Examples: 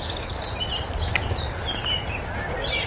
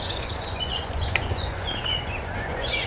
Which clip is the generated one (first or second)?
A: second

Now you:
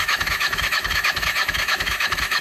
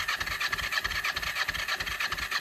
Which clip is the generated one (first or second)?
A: first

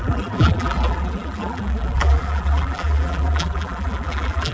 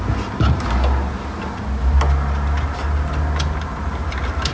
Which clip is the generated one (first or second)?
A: first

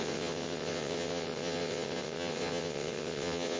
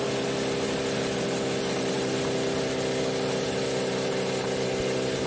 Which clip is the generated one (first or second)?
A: first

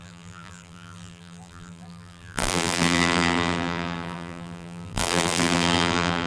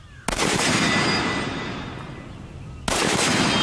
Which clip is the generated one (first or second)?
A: first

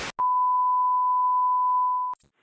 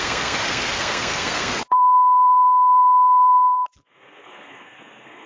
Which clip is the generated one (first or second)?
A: second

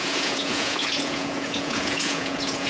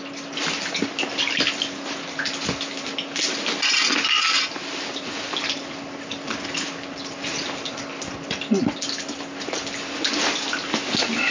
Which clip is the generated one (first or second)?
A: first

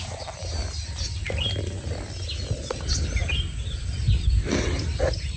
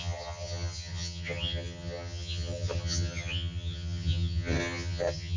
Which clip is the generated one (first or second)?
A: second